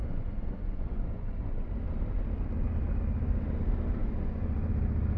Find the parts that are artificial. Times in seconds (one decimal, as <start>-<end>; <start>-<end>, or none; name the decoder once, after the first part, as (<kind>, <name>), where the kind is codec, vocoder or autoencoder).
0.0-1.7 (vocoder, Vocos); 4.0-4.7